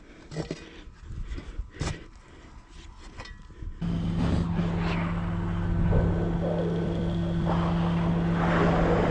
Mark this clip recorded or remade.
recorded